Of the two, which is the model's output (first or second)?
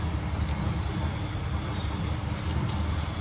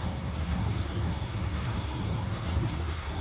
second